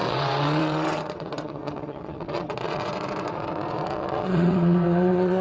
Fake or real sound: fake